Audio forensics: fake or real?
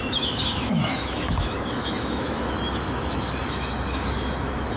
fake